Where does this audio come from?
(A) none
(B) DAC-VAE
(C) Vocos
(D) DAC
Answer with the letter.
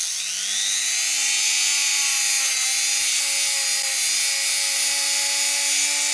A